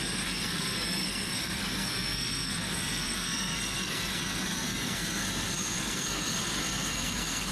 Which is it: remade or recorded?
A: remade